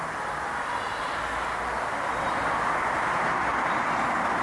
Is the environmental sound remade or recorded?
recorded